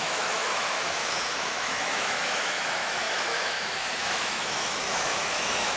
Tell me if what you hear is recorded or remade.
remade